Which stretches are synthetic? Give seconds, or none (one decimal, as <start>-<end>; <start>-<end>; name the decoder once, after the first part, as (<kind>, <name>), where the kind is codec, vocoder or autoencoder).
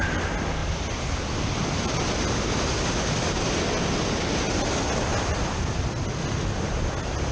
none